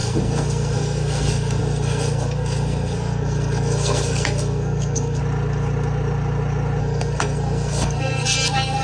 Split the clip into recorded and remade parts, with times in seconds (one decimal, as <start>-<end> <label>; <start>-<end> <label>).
0.0-5.2 remade; 5.2-6.8 recorded; 6.8-8.8 remade

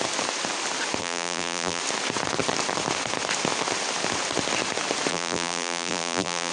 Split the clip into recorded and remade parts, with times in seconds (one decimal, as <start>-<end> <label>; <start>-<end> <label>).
0.0-1.0 recorded; 1.0-1.8 remade; 1.8-5.1 recorded; 5.1-6.5 remade

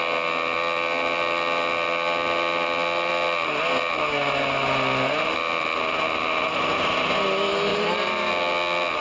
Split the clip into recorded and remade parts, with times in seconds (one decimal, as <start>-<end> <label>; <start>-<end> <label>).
0.0-7.7 recorded; 7.7-8.3 remade; 8.3-9.0 recorded

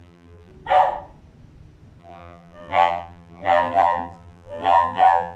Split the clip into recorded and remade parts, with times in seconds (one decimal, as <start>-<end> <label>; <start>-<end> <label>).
0.0-0.5 remade; 0.5-2.0 recorded; 2.0-5.4 remade

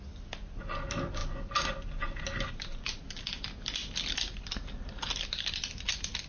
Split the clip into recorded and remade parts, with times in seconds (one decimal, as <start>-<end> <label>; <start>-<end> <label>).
0.0-6.3 recorded

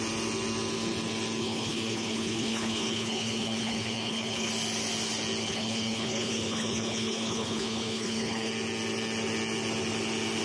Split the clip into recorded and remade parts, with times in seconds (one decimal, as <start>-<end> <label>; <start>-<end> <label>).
0.0-1.4 recorded; 1.4-4.5 remade; 4.5-5.4 recorded; 5.4-8.5 remade; 8.5-10.4 recorded

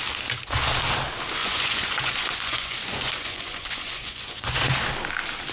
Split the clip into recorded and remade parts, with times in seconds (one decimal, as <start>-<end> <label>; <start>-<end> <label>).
0.0-1.4 recorded; 1.4-4.7 remade; 4.7-5.5 recorded

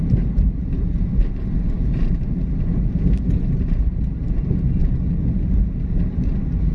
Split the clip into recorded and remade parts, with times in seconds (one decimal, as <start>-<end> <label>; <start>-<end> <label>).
0.0-2.4 remade; 2.4-3.4 recorded; 3.4-6.7 remade